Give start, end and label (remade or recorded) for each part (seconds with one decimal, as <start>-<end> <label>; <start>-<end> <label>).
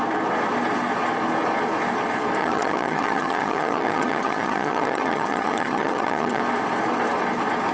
0.0-2.4 recorded; 2.4-6.4 remade; 6.4-7.7 recorded